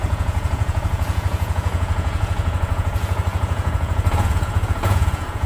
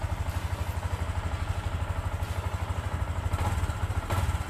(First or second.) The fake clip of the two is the first